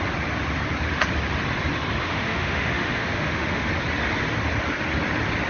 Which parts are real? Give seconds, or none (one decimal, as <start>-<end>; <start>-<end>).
0.0-2.0; 3.7-5.5

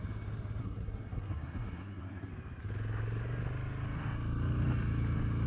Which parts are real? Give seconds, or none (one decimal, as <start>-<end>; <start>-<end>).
0.0-0.6; 2.3-5.5

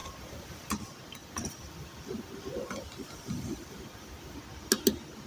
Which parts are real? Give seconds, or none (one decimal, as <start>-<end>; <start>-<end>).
0.7-1.2; 4.4-5.3

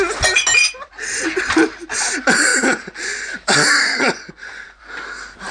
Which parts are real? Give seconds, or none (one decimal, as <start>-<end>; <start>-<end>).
0.0-2.5; 3.3-4.0; 4.8-5.5

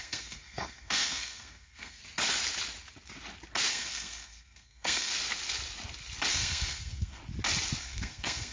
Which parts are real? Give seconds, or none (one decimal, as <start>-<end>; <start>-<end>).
2.0-3.7; 5.1-6.3; 7.2-7.8